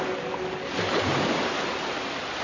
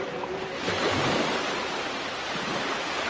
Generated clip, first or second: second